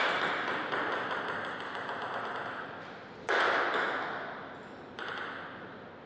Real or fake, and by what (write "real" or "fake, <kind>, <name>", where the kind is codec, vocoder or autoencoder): real